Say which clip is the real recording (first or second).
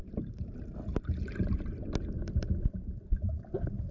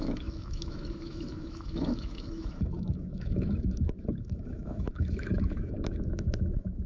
first